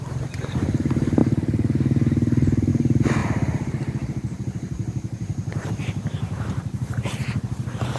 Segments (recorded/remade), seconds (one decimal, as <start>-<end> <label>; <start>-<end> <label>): 0.0-1.2 remade; 1.2-2.7 recorded; 2.7-8.0 remade